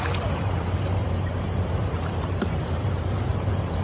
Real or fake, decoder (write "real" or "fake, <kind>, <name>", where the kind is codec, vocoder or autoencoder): fake, vocoder, BigVGAN v2